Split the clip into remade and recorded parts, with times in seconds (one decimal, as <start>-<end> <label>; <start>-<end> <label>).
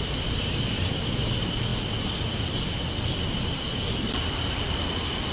0.0-5.3 recorded